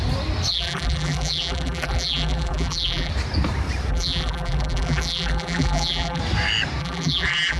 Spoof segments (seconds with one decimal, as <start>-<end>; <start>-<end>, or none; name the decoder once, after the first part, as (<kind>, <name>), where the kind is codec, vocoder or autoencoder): 0.5-3.1 (vocoder, BigVGAN v2); 3.9-6.2; 6.8-7.6